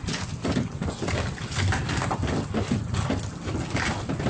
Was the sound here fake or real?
real